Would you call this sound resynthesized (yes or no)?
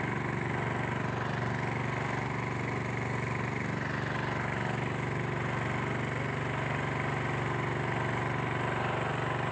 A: no